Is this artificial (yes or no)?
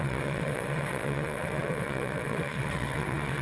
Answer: yes